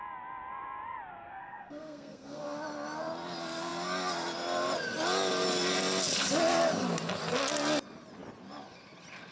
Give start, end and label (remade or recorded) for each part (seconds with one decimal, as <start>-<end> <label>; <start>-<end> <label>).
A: 0.0-1.1 recorded; 1.1-2.4 remade; 2.4-9.3 recorded